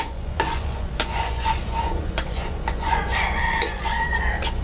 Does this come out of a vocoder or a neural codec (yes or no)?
yes